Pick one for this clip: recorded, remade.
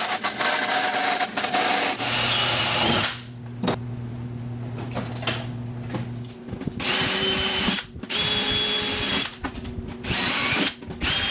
recorded